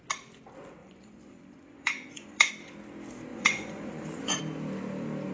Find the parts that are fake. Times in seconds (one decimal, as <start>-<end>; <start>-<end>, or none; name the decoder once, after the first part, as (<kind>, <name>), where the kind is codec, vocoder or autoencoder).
0.8-2.5 (vocoder, Vocos); 3.3-4.4